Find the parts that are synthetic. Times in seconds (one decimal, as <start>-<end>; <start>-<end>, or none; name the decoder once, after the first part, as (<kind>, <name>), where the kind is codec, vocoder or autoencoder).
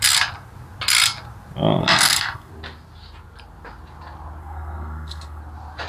1.8-2.5 (codec, SNAC); 4.4-5.4